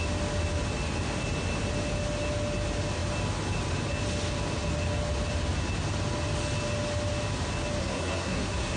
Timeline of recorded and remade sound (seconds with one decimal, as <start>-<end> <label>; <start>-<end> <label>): 0.0-7.8 recorded; 7.8-8.8 remade